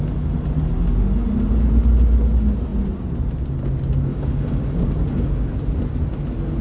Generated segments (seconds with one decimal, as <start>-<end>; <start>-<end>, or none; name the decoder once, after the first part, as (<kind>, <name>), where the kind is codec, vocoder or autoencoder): 4.1-5.5 (codec, DAC)